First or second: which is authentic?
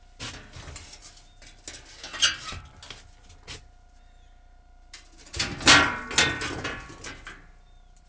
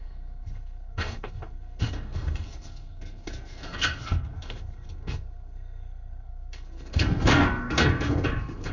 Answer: first